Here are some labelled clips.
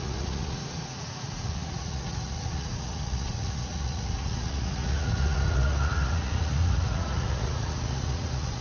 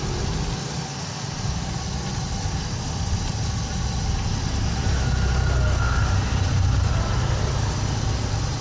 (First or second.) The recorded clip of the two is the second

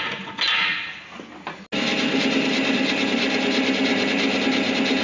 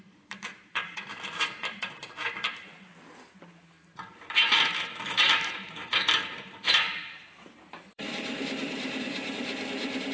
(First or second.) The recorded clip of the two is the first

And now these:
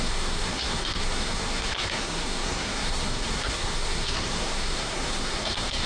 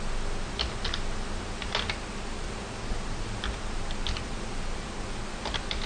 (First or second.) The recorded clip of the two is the second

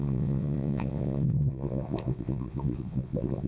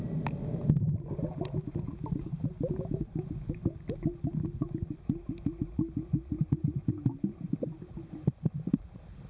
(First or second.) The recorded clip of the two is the second